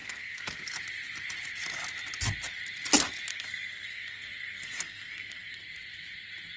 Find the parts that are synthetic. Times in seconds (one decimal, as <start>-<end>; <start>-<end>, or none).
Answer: 0.0-0.6; 3.3-5.6